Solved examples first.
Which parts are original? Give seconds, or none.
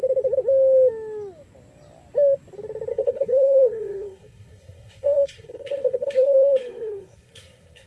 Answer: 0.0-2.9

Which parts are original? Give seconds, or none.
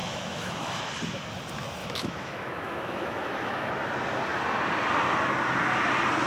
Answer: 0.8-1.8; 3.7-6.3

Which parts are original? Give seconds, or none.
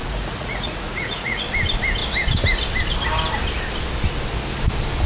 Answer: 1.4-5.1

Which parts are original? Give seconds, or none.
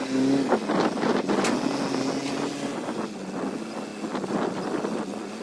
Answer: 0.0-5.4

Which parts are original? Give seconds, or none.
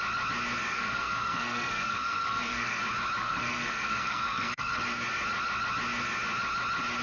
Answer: 0.0-0.7; 2.8-3.2; 4.8-7.0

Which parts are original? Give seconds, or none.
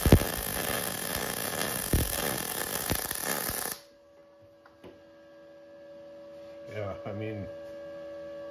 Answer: 0.0-8.5